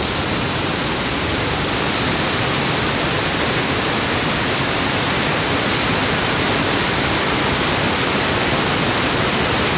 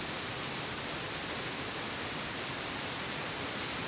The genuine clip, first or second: first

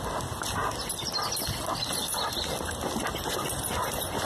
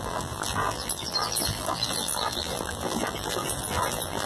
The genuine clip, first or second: first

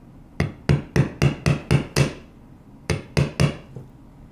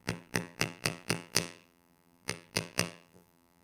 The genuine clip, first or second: first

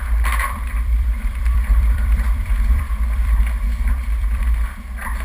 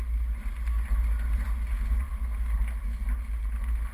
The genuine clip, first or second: second